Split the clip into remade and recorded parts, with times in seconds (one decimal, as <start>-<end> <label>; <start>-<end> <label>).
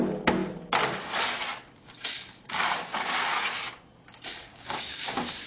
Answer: 0.0-4.4 recorded; 4.4-5.5 remade